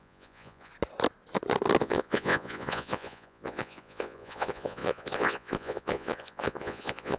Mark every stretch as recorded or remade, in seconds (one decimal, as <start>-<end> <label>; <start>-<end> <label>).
0.0-0.7 remade; 0.7-1.8 recorded; 1.8-7.2 remade